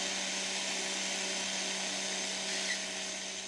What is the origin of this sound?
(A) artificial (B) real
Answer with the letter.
B